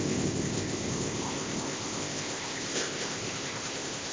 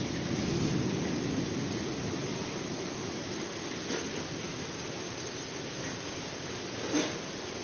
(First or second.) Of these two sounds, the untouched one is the second